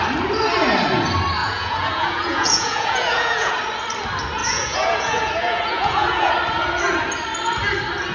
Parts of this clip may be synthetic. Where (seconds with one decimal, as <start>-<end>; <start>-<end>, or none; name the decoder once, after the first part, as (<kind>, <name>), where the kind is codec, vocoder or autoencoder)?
1.4-3.5 (vocoder, Vocos); 4.4-6.3